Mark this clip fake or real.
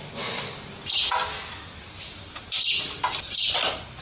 real